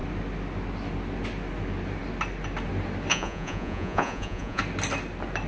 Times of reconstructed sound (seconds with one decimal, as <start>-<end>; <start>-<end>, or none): 3.1-4.6